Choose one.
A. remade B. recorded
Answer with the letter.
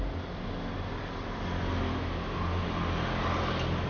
B